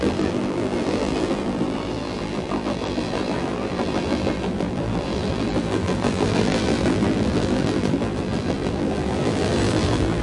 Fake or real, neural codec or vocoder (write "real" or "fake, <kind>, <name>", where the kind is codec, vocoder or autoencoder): fake, vocoder, BigVGAN v2